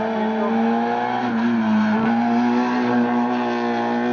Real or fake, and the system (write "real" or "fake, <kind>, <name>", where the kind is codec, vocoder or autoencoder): real